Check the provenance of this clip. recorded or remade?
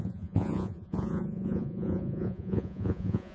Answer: remade